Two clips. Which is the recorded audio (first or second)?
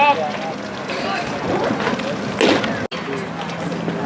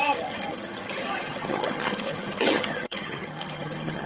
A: first